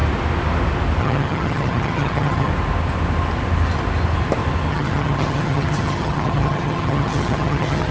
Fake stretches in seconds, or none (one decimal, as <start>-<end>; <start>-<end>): 1.0-2.5; 4.7-7.9